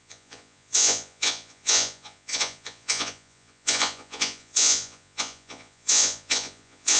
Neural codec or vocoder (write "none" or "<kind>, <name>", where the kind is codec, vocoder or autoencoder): vocoder, Vocos